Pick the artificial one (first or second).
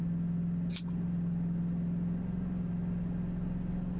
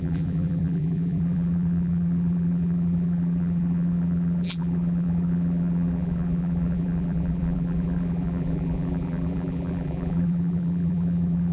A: second